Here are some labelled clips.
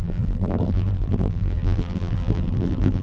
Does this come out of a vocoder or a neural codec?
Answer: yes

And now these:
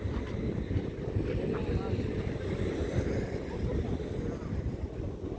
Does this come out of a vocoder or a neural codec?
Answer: no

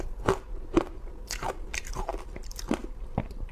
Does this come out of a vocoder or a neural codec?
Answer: yes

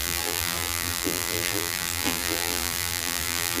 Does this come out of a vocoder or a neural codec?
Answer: yes